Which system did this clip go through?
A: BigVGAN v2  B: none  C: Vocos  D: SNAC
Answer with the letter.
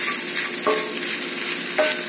B